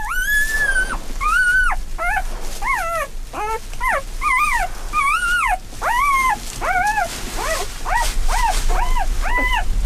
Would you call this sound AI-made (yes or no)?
no